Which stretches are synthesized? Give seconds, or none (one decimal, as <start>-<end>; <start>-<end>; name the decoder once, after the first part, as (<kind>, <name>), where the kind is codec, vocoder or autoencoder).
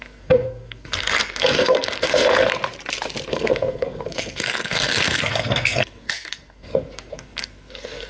0.0-2.5 (codec, SNAC); 3.3-8.1